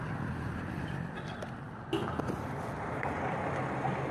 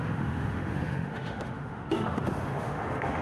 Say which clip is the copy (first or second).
second